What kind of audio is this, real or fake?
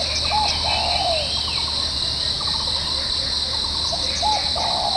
real